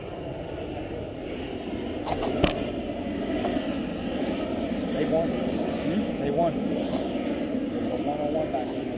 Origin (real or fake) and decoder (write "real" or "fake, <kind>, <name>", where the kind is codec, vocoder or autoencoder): real